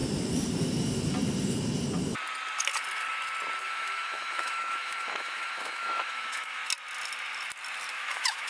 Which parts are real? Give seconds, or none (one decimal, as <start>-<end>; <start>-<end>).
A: 0.0-3.6; 6.6-7.9